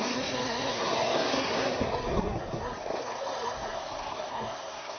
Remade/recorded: remade